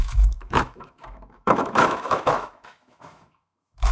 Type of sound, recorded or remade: remade